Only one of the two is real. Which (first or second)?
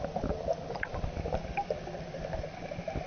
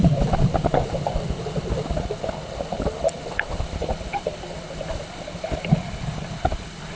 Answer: first